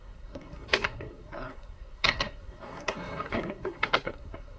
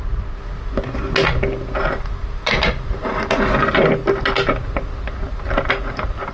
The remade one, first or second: first